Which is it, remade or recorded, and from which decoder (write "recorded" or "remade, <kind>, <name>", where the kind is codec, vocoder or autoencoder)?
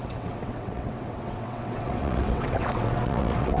remade, vocoder, WaveNeXt